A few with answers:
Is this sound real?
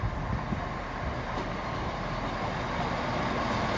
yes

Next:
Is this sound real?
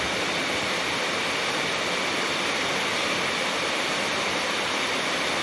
yes